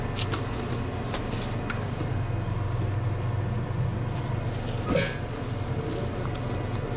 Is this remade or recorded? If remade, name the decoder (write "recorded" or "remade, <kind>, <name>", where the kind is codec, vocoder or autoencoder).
recorded